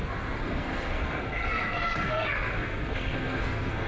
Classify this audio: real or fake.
fake